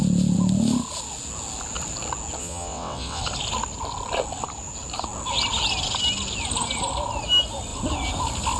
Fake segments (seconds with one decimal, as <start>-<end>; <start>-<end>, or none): 2.4-3.2